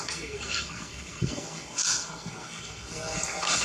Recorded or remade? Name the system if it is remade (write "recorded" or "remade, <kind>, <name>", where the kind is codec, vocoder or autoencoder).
remade, codec, SNAC